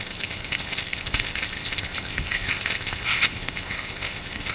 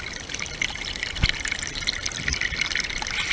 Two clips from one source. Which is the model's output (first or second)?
first